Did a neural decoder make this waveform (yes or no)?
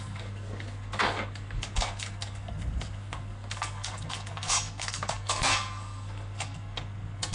yes